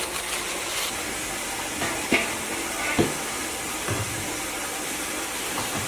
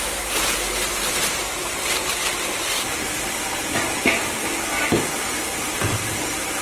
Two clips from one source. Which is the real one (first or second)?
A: first